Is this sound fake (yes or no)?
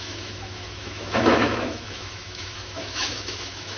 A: yes